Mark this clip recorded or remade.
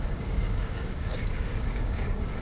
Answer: remade